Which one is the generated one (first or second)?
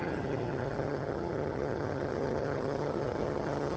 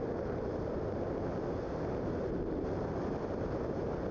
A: first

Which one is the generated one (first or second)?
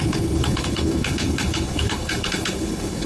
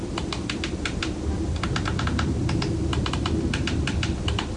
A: first